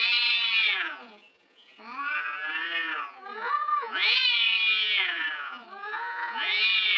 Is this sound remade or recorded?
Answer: remade